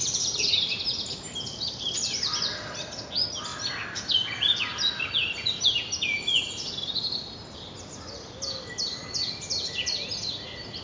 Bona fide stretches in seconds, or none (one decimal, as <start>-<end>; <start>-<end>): 0.0-10.8